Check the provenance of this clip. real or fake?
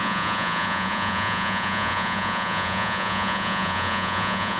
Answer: fake